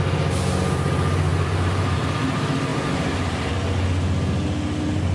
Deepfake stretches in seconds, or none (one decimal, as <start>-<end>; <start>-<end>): 1.3-2.0; 2.7-3.5

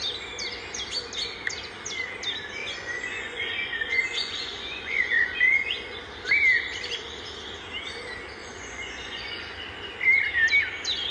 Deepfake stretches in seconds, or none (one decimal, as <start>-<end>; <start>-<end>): 2.6-6.0; 8.4-9.6

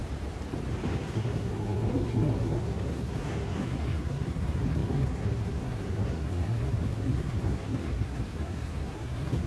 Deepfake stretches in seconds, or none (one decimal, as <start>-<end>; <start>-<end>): 0.9-9.5

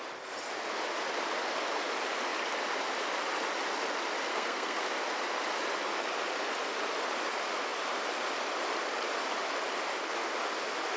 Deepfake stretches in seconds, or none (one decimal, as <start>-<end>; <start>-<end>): 4.3-4.8

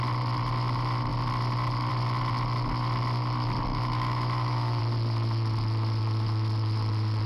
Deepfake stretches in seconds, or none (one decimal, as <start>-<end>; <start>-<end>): 3.7-4.8

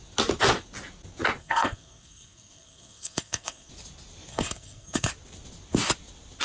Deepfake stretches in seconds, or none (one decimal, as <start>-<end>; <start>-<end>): 1.4-3.7; 4.3-5.1

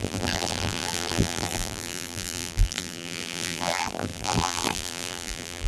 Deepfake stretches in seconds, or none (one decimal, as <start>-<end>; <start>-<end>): 0.0-5.7